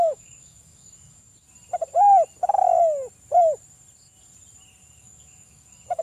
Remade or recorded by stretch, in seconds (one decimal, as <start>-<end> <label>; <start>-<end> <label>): 0.0-1.3 remade; 1.3-4.9 recorded; 4.9-6.0 remade

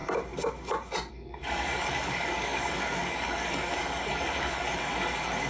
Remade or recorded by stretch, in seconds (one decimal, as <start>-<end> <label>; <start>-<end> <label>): 0.0-1.1 recorded; 1.1-5.5 remade

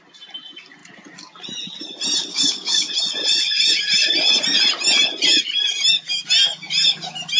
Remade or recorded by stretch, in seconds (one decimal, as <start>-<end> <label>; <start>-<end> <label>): 0.0-2.3 recorded; 2.3-2.9 remade; 2.9-7.4 recorded